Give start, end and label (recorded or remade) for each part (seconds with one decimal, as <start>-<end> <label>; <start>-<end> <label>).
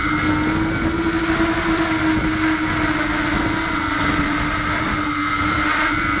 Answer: 0.0-1.6 recorded; 1.6-2.3 remade; 2.3-4.2 recorded; 4.2-6.2 remade